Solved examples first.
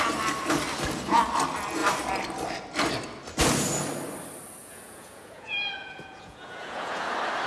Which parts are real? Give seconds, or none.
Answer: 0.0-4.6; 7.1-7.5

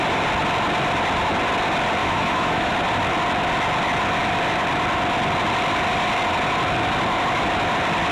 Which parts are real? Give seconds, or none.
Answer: 0.0-2.0; 2.7-8.1

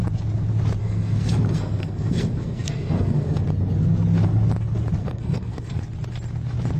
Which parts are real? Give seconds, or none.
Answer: 0.0-0.8; 3.4-5.0; 5.8-6.8

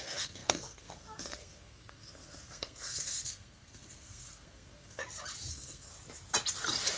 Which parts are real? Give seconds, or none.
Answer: 5.0-5.5; 5.9-7.0